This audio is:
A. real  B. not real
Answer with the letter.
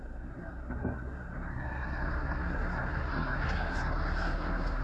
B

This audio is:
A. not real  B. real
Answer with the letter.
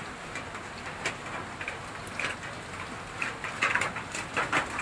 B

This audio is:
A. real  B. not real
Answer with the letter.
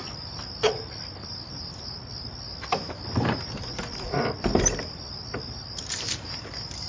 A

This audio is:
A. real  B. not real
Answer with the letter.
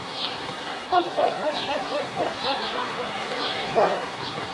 B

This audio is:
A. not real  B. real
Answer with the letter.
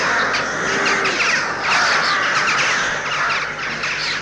B